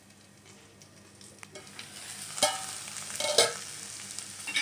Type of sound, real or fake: real